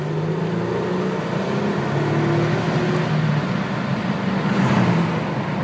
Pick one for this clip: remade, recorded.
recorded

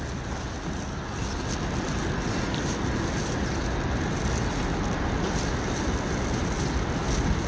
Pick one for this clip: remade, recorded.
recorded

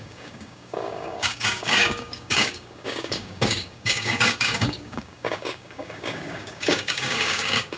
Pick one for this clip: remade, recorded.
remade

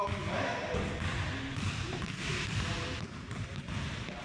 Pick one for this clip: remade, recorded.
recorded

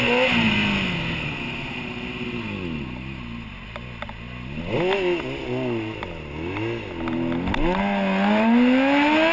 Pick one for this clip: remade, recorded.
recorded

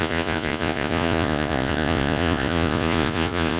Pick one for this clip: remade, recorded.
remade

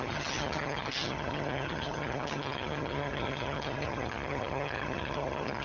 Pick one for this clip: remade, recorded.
remade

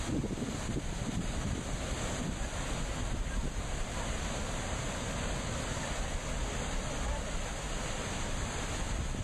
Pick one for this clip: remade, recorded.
recorded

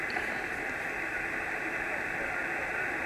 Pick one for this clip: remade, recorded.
recorded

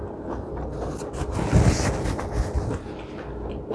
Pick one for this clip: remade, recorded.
recorded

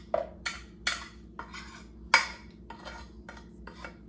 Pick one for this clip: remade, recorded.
recorded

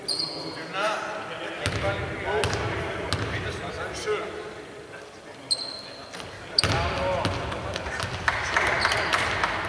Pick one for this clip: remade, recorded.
recorded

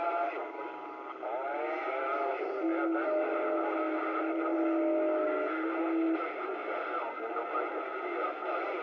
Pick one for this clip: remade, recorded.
recorded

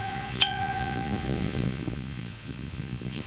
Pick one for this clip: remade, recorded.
remade